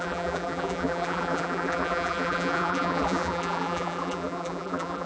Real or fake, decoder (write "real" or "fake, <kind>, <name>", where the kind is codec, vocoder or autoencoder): fake, vocoder, BigVGAN v2